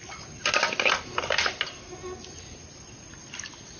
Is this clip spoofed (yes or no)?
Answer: no